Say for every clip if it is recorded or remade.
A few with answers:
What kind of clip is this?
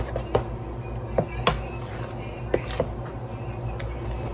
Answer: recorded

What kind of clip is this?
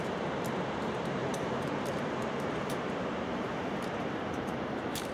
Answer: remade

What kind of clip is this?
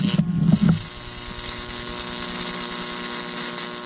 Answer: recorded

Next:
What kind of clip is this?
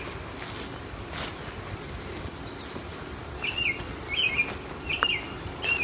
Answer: recorded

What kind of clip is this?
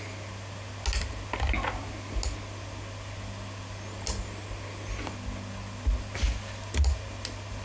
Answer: recorded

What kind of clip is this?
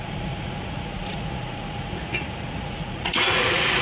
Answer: remade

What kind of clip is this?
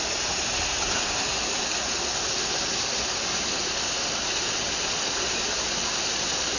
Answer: recorded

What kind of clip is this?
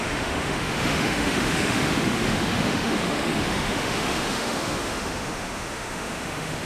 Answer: remade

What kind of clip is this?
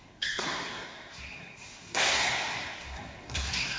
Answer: remade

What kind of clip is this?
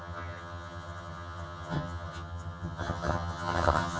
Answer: remade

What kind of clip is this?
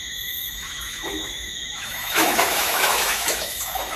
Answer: remade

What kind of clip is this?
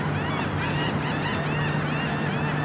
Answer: recorded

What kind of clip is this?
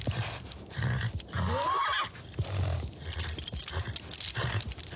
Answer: recorded